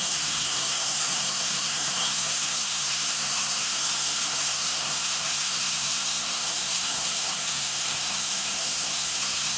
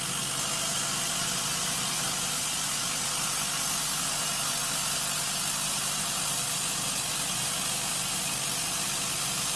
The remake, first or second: first